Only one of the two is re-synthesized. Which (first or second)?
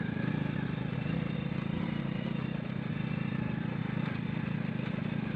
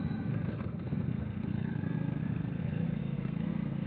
second